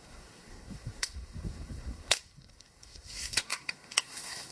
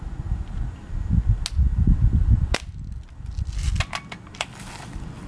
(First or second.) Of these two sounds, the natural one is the second